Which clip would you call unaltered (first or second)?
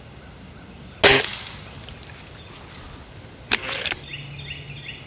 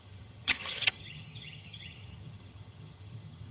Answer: first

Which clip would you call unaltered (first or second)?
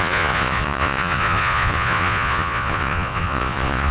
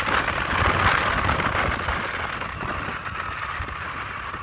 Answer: second